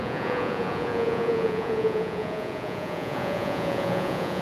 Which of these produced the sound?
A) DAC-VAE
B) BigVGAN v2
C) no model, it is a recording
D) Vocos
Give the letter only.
D